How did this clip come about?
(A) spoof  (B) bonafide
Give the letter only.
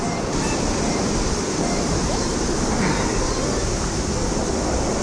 B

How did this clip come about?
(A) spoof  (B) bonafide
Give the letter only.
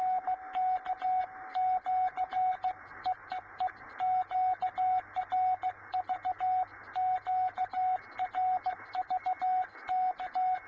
B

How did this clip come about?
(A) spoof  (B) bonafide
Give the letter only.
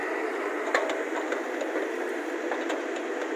B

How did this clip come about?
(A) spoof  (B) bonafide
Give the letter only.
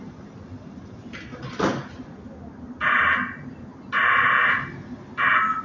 B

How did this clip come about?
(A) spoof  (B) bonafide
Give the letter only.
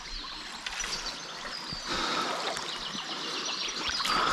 B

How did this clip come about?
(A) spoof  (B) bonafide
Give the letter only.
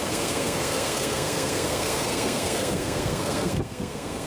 A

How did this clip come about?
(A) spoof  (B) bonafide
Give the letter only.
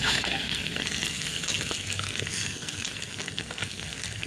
A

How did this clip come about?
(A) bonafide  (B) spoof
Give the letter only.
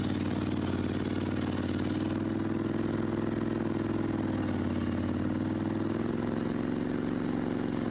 A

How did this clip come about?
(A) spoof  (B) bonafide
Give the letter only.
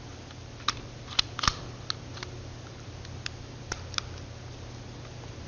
B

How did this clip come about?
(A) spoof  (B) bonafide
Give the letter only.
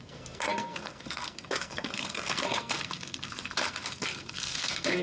A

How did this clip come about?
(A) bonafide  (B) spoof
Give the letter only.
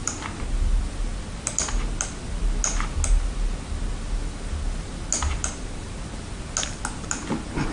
A